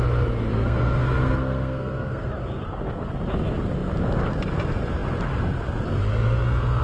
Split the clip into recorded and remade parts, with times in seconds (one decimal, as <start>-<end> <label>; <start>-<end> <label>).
0.0-0.5 recorded; 0.5-2.3 remade; 2.3-6.8 recorded